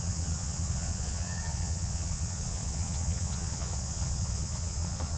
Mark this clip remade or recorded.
remade